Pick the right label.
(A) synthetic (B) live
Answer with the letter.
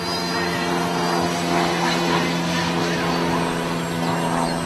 B